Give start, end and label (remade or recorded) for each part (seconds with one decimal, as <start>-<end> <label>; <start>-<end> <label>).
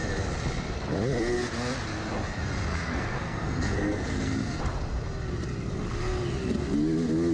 0.0-2.7 recorded; 2.7-4.6 remade; 4.6-7.3 recorded